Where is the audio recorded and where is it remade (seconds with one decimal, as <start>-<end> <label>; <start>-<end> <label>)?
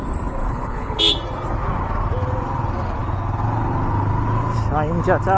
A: 0.0-0.4 recorded; 0.4-1.0 remade; 1.0-5.4 recorded